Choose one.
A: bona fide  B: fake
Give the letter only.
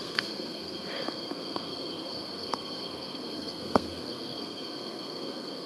B